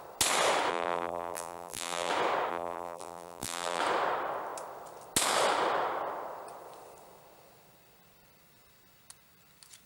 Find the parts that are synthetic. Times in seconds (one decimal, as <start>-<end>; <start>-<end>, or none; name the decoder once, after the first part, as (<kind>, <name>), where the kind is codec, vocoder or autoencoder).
0.7-2.1 (vocoder, BigVGAN v2); 2.5-3.8